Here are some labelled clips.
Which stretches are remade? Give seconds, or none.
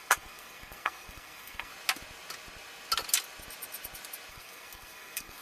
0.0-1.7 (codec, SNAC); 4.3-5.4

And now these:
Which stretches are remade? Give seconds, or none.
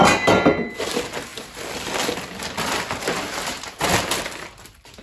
none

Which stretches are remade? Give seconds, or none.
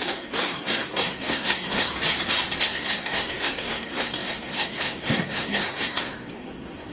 0.0-1.9 (codec, SNAC); 2.6-6.9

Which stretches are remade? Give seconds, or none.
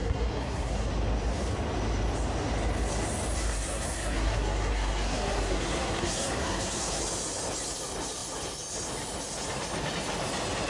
0.0-0.9 (codec, SNAC); 3.4-7.0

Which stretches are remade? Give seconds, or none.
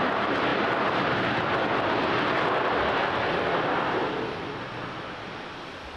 none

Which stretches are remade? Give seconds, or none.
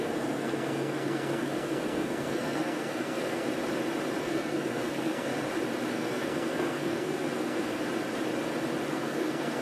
0.0-3.5 (codec, SNAC); 4.2-5.3; 5.9-7.8; 8.9-9.6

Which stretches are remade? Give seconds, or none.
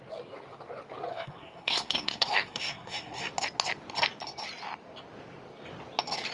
1.1-3.3 (codec, SNAC)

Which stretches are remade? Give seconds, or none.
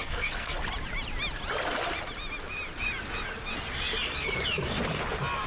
0.0-0.6 (codec, SNAC)